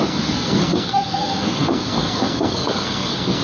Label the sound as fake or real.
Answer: fake